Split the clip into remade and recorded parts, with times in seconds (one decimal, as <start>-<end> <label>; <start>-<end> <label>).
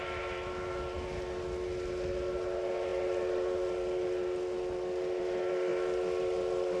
0.0-6.8 recorded